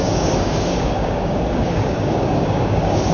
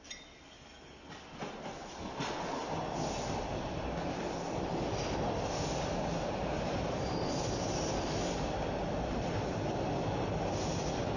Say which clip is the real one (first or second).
second